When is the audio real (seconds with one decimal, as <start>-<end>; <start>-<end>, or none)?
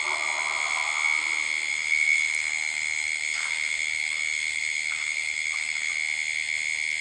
0.0-1.7; 5.9-7.0